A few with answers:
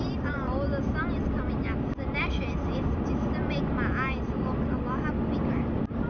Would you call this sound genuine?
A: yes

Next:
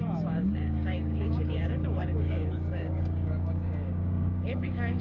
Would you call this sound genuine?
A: no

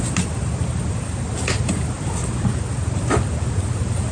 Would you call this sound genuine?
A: yes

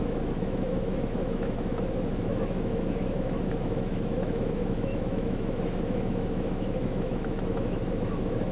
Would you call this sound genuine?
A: no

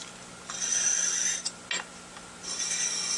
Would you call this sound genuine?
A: yes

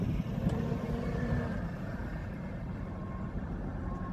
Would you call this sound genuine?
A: no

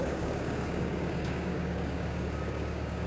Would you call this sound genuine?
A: no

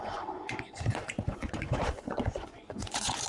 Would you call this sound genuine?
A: no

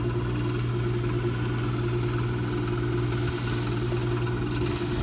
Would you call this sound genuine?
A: yes